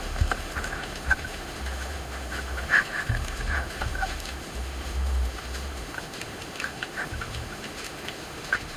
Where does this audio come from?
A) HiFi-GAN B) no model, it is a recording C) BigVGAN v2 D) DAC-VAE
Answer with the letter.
D